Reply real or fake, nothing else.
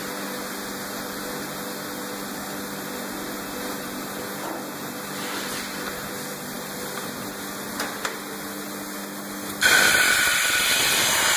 real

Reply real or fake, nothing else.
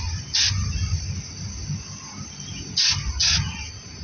real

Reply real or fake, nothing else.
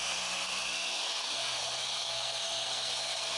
fake